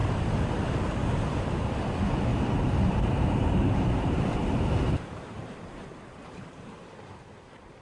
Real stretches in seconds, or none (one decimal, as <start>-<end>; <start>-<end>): 1.8-2.3; 6.9-7.8